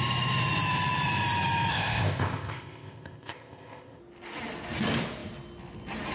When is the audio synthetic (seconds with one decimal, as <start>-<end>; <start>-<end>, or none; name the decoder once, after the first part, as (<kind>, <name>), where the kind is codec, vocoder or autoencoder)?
1.7-4.0 (codec, ZipCodec)